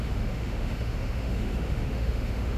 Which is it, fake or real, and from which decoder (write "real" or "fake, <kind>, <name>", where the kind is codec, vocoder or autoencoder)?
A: fake, autoencoder, DAC-VAE